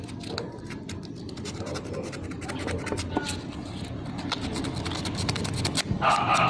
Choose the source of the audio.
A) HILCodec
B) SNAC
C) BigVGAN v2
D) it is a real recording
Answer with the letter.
D